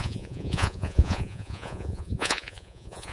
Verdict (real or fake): fake